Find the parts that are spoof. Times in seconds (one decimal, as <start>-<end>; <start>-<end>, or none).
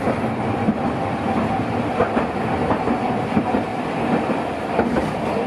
0.0-2.0; 2.6-3.7; 4.7-5.5